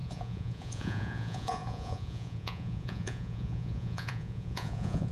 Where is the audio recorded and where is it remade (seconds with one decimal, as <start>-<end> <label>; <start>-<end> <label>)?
0.0-5.1 remade